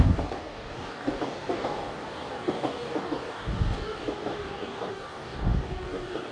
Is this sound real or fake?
fake